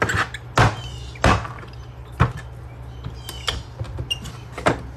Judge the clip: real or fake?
real